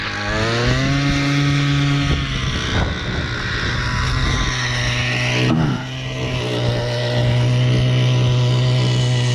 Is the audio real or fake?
real